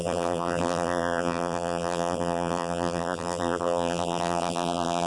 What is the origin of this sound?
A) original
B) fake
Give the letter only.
B